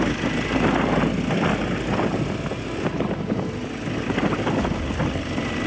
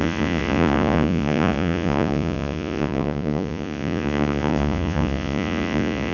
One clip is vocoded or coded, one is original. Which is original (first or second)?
first